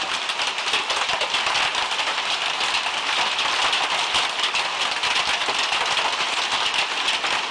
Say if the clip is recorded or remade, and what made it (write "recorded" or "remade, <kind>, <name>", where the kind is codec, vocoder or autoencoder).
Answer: recorded